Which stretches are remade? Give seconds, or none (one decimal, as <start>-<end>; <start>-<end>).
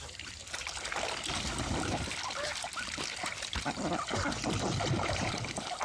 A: 0.0-0.4; 3.9-5.8